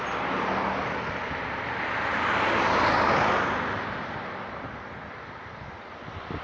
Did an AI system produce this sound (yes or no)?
no